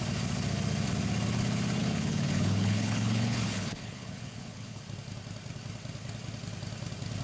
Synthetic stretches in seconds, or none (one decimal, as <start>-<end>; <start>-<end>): 1.8-4.8